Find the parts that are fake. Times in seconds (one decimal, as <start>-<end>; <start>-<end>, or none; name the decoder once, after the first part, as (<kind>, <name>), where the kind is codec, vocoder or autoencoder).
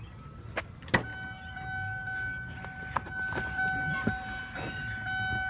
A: none